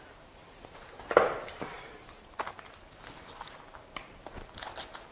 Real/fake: real